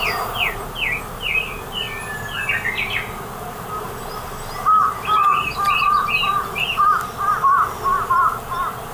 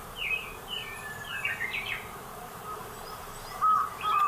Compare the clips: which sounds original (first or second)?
first